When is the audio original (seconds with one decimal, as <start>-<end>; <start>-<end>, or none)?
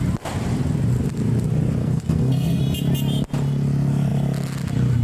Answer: 0.0-1.8; 2.6-5.0